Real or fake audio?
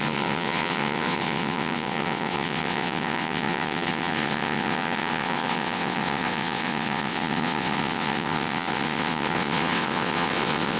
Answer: fake